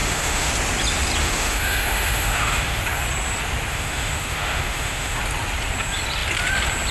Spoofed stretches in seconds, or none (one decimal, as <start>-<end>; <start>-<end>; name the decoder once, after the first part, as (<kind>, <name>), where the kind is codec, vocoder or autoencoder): 0.0-0.5 (autoencoder, DAC-VAE); 1.2-2.8; 3.7-5.2